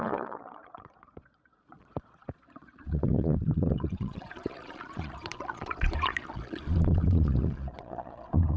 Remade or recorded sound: remade